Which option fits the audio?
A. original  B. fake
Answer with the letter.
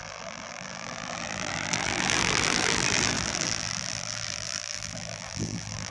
B